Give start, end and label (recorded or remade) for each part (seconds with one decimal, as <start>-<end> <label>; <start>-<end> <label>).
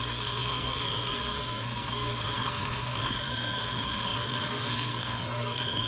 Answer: 0.0-5.9 remade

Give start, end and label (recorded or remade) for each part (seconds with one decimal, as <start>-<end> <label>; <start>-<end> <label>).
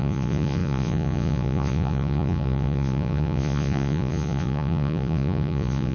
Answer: 0.0-5.9 remade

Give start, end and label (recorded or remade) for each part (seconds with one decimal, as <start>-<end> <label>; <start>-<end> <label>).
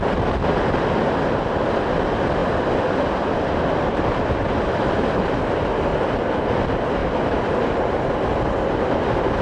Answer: 0.0-2.4 recorded; 2.4-4.6 remade; 4.6-5.9 recorded; 5.9-6.5 remade; 6.5-7.0 recorded; 7.0-8.0 remade; 8.0-9.4 recorded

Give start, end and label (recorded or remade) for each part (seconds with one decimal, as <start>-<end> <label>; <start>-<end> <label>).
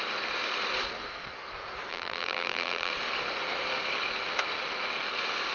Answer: 0.0-1.9 recorded; 1.9-2.9 remade; 2.9-5.5 recorded